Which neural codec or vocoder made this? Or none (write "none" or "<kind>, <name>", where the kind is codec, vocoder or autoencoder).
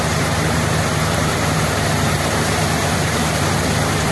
vocoder, BigVGAN v2